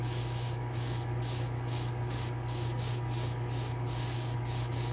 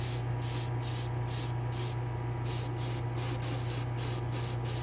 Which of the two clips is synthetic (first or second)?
first